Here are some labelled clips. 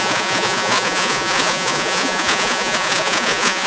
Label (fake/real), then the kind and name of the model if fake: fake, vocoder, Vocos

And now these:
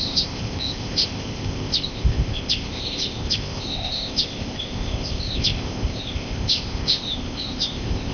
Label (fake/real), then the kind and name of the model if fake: fake, codec, ZipCodec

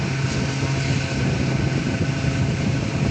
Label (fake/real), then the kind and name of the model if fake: real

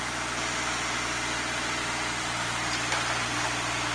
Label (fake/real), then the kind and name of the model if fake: real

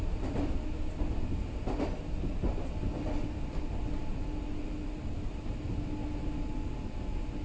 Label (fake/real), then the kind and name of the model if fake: real